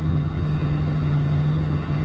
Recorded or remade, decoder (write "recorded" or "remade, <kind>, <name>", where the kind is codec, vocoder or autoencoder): remade, vocoder, HiFi-GAN